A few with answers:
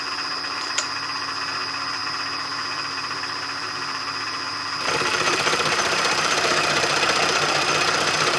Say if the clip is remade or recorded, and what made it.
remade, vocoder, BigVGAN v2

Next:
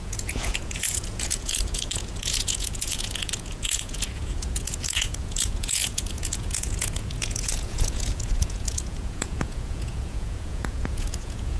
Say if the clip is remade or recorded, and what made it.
remade, vocoder, Vocos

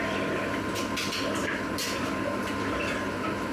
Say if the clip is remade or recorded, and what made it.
recorded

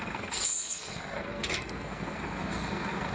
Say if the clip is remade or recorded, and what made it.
remade, codec, SNAC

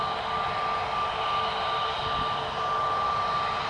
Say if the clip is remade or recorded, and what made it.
recorded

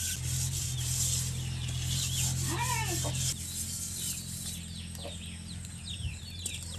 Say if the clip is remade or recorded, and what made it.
recorded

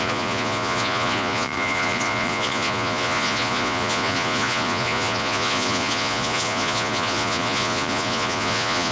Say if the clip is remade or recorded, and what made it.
remade, vocoder, Vocos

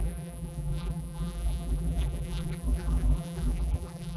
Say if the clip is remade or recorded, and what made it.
remade, vocoder, BigVGAN v2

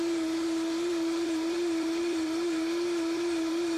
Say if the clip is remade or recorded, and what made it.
remade, vocoder, BigVGAN v2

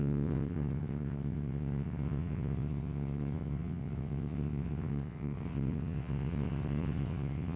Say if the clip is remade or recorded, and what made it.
remade, vocoder, WaveNeXt